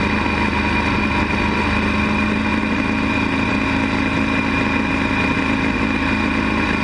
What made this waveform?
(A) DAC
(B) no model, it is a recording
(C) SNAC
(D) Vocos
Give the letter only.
B